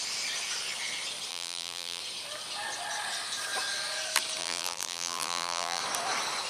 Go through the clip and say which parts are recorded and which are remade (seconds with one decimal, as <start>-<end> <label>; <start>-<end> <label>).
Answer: 0.0-1.3 recorded; 1.3-2.0 remade; 2.0-4.4 recorded; 4.4-5.8 remade; 5.8-6.5 recorded